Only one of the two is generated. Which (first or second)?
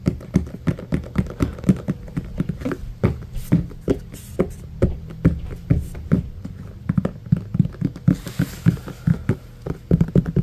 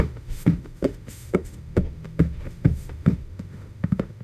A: second